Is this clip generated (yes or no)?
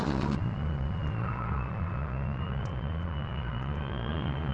yes